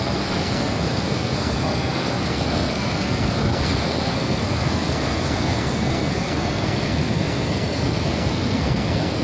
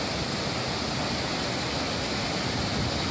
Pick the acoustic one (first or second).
second